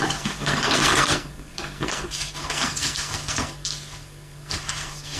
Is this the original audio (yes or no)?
no